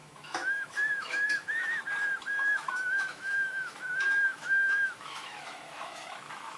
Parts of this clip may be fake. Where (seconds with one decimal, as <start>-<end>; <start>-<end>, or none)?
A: 0.0-1.8; 2.3-6.6